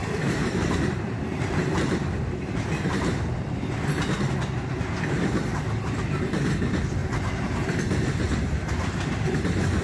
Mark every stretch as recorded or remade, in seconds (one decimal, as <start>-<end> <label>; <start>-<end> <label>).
0.0-4.0 remade; 4.0-7.0 recorded; 7.0-9.3 remade; 9.3-9.8 recorded